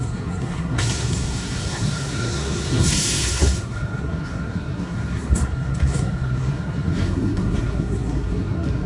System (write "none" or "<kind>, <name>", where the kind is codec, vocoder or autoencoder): codec, SNAC